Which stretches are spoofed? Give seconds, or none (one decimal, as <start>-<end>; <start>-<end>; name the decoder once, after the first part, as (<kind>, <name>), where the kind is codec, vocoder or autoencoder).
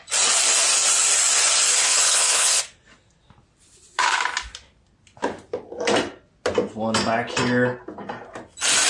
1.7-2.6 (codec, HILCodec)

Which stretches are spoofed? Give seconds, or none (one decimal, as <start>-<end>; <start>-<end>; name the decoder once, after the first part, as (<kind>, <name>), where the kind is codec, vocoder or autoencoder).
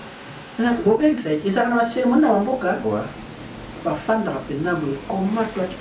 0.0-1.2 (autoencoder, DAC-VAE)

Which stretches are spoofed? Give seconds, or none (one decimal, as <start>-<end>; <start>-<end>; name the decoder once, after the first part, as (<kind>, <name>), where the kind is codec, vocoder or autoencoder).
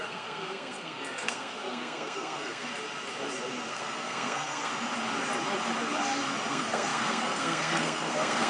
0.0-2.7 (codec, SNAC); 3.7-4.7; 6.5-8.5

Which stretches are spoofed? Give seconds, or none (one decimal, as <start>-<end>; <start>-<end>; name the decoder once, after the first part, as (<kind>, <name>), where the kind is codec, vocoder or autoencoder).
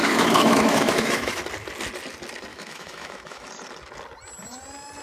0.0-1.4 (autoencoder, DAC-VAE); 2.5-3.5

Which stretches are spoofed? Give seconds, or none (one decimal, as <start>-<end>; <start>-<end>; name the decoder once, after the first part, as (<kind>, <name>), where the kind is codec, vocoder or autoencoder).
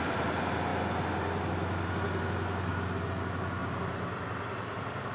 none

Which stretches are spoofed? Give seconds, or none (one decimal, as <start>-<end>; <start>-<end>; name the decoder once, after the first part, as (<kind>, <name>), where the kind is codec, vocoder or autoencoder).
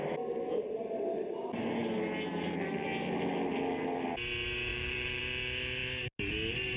4.7-5.2 (vocoder, BigVGAN v2)